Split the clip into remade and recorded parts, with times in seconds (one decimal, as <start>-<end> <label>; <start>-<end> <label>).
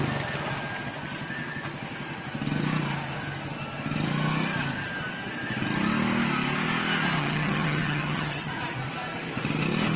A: 0.0-7.2 recorded; 7.2-8.5 remade; 8.5-10.0 recorded